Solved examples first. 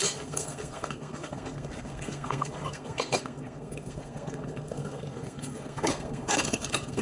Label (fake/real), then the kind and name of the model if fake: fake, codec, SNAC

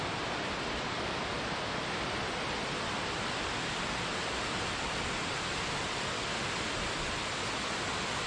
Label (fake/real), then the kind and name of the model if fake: real